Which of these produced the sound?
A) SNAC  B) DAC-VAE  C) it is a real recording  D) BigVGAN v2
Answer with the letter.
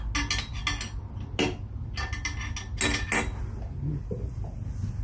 C